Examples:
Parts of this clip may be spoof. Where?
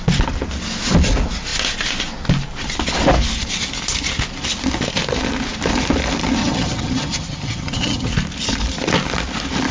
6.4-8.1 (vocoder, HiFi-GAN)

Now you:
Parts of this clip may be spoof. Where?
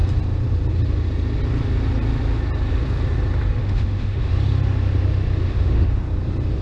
3.6-4.3 (autoencoder, DAC-VAE); 5.4-6.0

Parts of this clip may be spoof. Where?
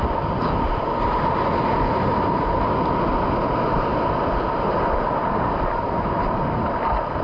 none